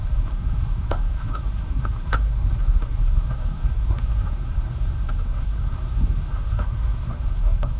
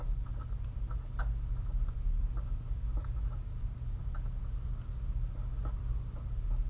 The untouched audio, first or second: second